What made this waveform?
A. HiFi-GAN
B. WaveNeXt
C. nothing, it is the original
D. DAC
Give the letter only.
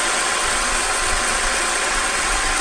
B